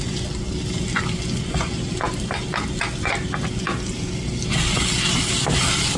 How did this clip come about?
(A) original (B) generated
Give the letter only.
A